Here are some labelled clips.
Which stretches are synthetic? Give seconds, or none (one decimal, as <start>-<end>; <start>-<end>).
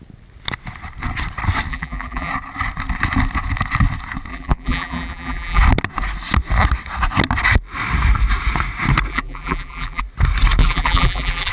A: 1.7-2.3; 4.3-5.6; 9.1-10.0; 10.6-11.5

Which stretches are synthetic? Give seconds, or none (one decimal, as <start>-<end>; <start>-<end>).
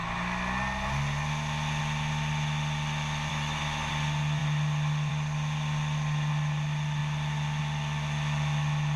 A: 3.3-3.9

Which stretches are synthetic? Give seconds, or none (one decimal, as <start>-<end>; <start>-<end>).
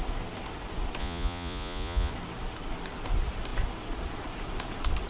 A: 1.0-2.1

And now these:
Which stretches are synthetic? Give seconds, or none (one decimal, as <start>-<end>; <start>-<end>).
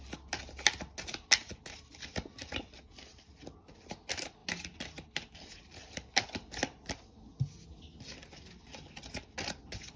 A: none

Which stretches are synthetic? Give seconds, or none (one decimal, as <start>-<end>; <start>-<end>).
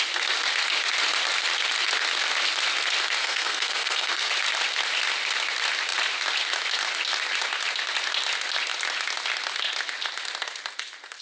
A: 3.2-4.3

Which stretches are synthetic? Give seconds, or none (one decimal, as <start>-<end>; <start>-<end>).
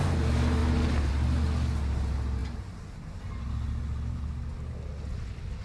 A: none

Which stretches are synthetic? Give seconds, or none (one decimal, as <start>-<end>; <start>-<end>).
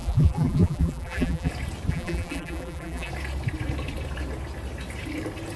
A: 0.0-1.5; 1.9-3.1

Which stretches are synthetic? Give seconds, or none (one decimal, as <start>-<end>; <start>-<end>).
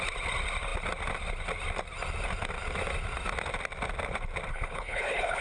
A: 4.5-5.4